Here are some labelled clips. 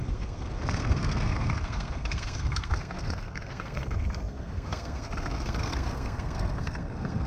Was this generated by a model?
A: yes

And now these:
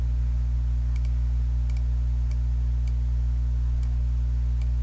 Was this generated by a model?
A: no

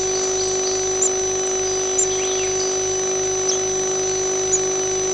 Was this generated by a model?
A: no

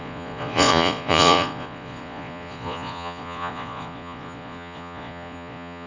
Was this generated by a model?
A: yes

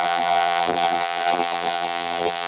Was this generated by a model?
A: yes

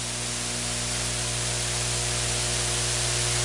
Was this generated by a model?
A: no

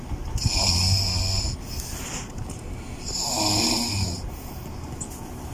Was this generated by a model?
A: no